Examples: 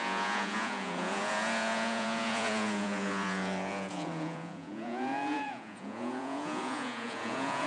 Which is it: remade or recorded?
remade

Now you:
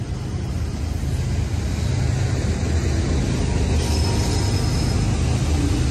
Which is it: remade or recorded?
recorded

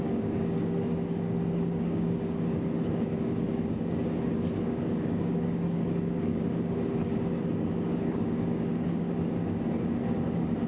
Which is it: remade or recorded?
remade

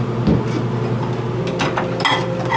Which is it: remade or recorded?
recorded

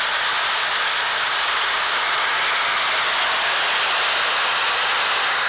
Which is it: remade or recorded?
recorded